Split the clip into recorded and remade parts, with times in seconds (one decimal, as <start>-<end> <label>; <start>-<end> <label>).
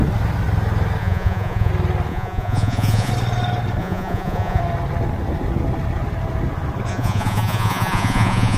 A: 0.0-1.0 recorded; 1.0-1.7 remade; 1.7-2.1 recorded; 2.1-3.1 remade; 3.1-3.8 recorded; 3.8-4.6 remade; 4.6-6.9 recorded; 6.9-8.6 remade